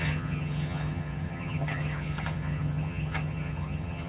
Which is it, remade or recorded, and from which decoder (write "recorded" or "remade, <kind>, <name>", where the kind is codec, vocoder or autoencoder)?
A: remade, vocoder, HiFi-GAN